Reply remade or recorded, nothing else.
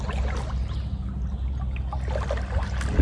recorded